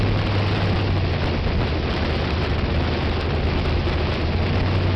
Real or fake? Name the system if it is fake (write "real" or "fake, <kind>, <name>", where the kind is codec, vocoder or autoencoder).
real